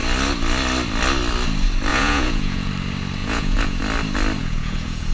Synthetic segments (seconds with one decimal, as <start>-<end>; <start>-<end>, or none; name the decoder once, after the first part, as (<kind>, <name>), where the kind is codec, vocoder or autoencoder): 1.9-2.7 (vocoder, Vocos); 3.2-3.8; 4.4-5.1